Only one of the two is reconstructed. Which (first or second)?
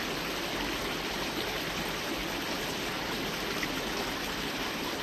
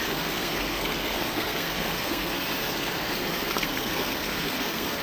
second